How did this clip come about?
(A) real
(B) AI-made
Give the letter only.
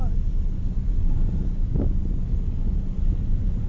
A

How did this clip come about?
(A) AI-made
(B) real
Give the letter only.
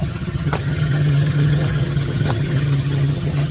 A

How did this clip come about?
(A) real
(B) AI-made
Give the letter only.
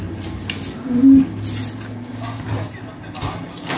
A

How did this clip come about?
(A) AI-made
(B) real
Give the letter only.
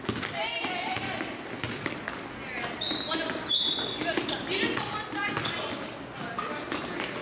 B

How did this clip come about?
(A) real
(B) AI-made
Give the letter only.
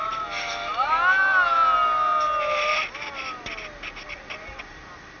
A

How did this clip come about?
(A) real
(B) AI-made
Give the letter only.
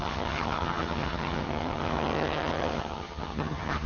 B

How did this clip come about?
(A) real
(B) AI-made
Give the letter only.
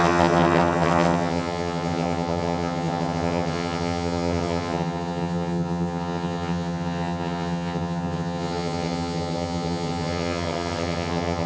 B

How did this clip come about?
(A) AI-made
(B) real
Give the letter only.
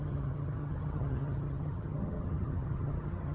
A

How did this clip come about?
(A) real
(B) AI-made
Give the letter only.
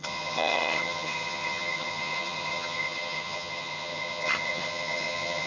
B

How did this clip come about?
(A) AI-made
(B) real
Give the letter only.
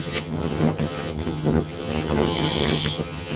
A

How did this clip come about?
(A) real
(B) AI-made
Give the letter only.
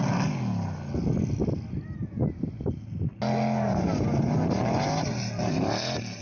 A